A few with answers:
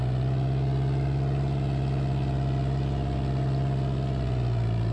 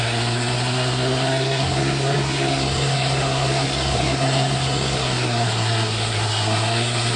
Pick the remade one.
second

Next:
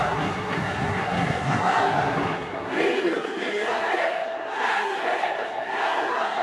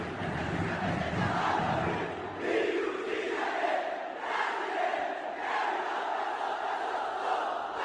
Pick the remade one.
first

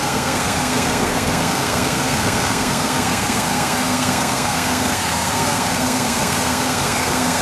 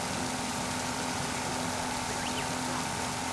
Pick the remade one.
first